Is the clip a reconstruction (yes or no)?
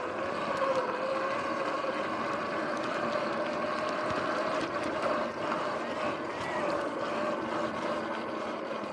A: no